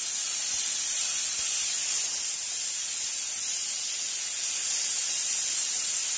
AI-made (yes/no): no